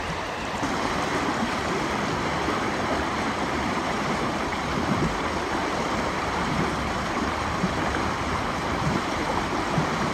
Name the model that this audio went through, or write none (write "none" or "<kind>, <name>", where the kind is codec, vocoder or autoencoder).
vocoder, BigVGAN v2